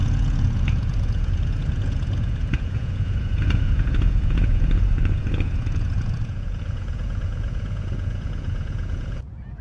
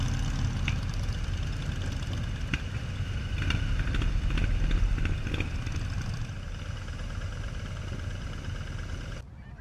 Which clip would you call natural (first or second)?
second